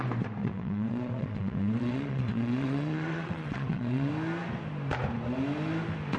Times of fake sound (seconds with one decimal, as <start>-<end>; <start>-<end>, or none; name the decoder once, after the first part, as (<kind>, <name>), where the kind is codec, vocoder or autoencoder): 0.4-4.1 (vocoder, WaveNeXt)